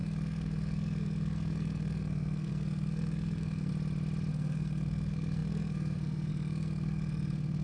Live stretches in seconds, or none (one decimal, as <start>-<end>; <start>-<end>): 3.7-4.3